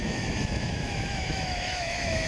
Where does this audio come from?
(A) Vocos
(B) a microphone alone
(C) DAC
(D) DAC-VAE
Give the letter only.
D